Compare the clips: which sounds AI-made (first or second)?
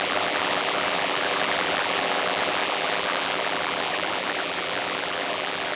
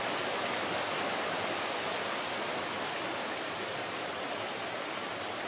first